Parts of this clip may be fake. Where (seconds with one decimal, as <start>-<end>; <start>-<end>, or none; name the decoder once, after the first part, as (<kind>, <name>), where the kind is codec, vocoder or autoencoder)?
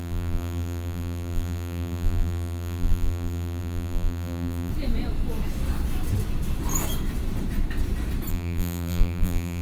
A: 0.0-4.7 (vocoder, BigVGAN v2); 8.3-9.6